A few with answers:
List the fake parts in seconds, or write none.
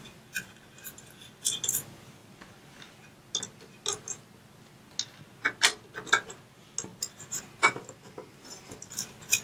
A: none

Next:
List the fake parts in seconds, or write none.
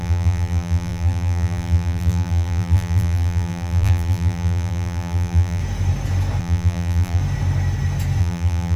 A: 0.0-5.6 (vocoder, BigVGAN v2); 6.4-7.2; 8.2-8.8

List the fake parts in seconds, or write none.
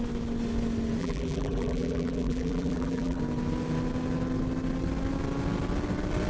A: 1.0-3.2 (vocoder, BigVGAN v2)